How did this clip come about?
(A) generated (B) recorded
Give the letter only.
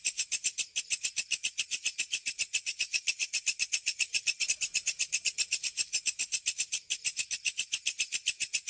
A